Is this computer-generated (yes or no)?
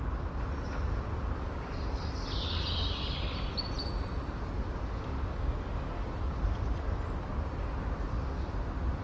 no